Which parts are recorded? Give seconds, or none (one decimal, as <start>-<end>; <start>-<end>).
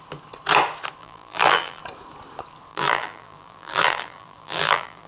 0.0-1.0; 1.8-2.7